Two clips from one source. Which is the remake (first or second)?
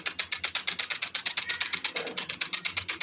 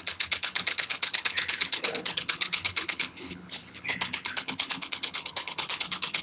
second